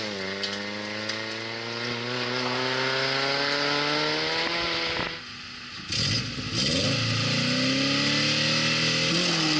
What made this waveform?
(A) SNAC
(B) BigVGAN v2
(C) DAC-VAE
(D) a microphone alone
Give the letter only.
D